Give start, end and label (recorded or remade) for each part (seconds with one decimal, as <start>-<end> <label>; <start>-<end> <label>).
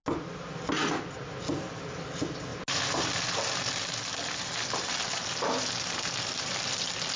0.0-7.2 recorded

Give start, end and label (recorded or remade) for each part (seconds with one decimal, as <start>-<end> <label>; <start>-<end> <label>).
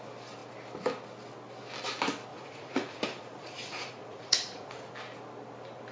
0.0-2.3 recorded; 2.3-4.9 remade; 4.9-5.9 recorded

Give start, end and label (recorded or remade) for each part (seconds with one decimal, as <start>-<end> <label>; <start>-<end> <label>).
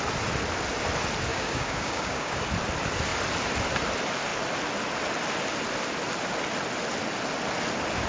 0.0-1.3 recorded; 1.3-2.4 remade; 2.4-8.1 recorded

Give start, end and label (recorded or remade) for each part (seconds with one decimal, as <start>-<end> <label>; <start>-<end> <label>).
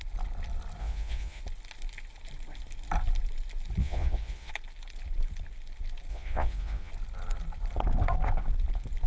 0.0-0.8 recorded; 0.8-1.4 remade; 1.4-3.8 recorded; 3.8-4.5 remade; 4.5-6.1 recorded; 6.1-6.9 remade; 6.9-9.1 recorded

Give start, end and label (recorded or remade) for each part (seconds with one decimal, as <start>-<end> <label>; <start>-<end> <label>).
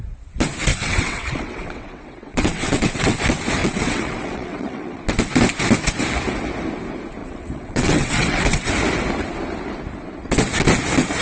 0.0-0.7 recorded; 0.7-3.2 remade; 3.2-3.6 recorded; 3.6-5.0 remade; 5.0-7.2 recorded; 7.2-8.7 remade; 8.7-11.2 recorded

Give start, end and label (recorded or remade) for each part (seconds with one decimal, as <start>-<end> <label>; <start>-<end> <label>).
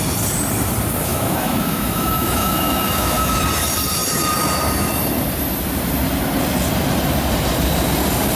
0.0-1.1 recorded; 1.1-3.4 remade; 3.4-8.4 recorded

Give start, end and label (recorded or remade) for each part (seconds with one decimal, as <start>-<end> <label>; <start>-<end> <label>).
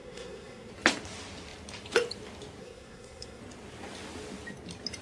0.0-0.7 remade; 0.7-2.6 recorded; 2.6-3.4 remade; 3.4-5.0 recorded